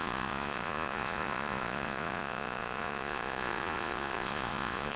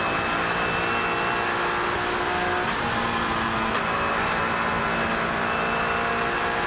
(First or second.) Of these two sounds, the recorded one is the second